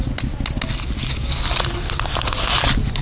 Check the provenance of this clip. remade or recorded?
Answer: recorded